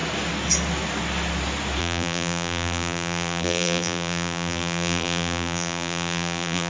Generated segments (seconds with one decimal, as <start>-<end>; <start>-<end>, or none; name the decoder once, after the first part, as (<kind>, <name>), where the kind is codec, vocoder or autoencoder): 1.8-6.7 (vocoder, BigVGAN v2)